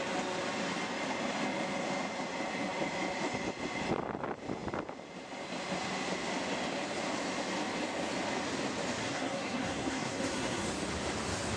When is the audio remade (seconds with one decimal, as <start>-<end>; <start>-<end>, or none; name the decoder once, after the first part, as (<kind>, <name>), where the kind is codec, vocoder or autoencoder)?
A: 9.0-10.7 (codec, SNAC)